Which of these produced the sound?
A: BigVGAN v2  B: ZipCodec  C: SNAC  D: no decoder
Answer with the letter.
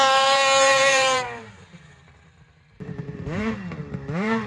A